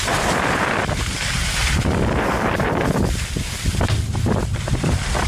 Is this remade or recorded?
recorded